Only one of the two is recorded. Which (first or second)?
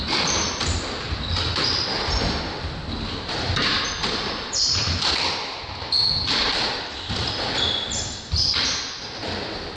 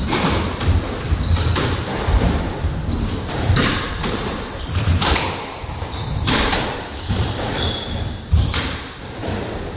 first